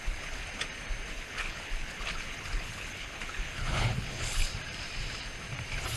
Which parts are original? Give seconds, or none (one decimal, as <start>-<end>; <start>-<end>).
0.4-1.1; 4.5-6.0